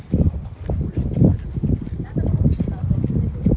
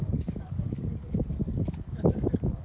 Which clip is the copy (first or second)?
second